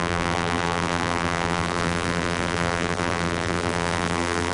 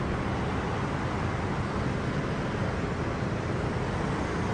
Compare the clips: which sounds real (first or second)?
second